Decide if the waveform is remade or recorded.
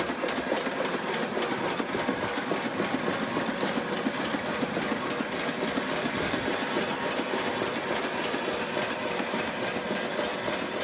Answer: recorded